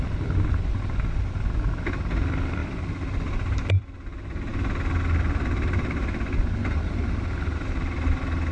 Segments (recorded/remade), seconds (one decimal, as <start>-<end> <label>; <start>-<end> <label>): 0.0-8.5 recorded